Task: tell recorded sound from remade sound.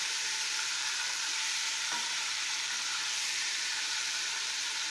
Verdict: remade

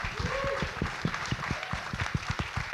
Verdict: recorded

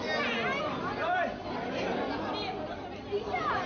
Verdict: recorded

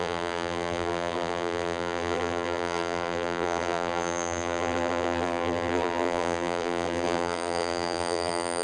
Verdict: remade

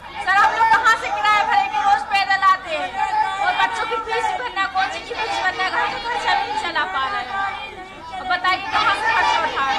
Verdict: recorded